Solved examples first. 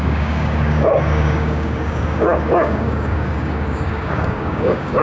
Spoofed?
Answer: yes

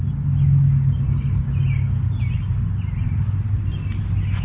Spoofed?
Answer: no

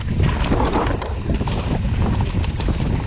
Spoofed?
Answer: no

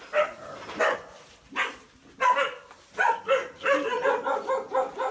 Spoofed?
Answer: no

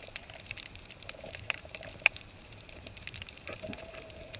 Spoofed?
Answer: yes